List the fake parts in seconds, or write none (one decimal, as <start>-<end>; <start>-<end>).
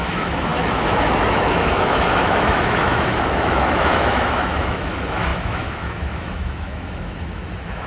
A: 0.0-7.9